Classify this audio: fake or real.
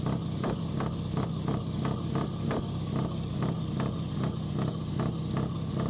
real